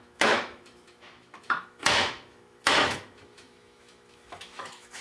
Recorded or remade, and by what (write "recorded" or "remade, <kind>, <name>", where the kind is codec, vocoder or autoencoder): remade, autoencoder, DAC-VAE